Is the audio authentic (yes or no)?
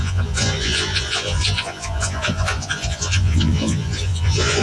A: no